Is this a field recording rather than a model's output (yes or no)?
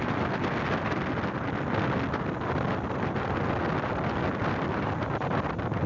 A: yes